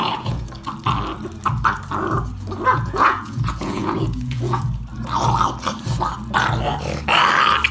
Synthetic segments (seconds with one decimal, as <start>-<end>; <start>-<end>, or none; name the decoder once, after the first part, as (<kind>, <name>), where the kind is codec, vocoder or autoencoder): 0.0-0.5 (vocoder, Vocos); 2.7-4.6